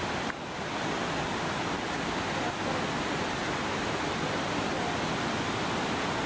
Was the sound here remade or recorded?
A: recorded